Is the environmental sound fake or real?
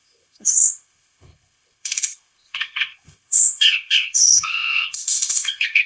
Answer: fake